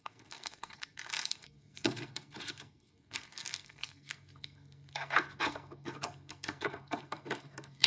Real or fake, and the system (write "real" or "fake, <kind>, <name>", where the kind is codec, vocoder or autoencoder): fake, codec, SNAC